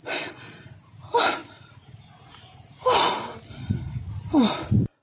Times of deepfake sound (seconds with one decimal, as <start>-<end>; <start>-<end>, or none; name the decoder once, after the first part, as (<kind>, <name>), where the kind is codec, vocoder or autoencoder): none